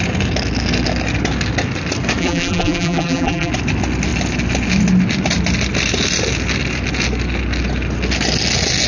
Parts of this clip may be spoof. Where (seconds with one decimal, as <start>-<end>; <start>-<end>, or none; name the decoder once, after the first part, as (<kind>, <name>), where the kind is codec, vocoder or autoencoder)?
2.2-3.5 (vocoder, BigVGAN v2)